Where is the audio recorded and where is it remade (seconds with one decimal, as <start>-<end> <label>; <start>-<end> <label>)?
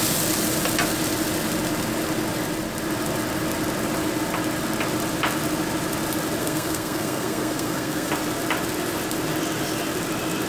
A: 0.0-6.4 recorded; 6.4-8.1 remade; 8.1-10.5 recorded